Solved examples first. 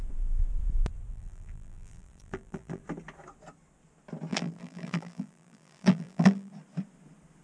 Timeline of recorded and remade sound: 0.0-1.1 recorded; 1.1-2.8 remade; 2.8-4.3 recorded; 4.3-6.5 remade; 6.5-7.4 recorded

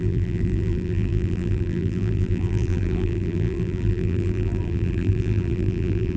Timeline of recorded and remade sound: 0.0-6.2 remade

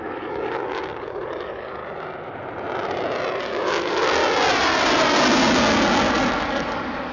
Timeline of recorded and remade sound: 0.0-1.8 remade; 1.8-3.4 recorded; 3.4-4.2 remade; 4.2-6.3 recorded; 6.3-7.1 remade

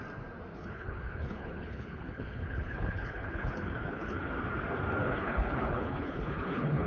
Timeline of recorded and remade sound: 0.0-0.5 recorded; 0.5-4.3 remade; 4.3-5.0 recorded; 5.0-6.9 remade